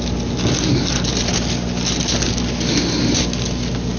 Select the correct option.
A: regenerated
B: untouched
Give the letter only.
B